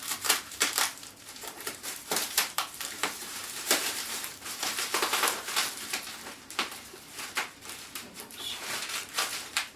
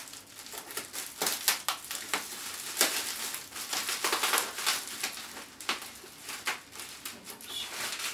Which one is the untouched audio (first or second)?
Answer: second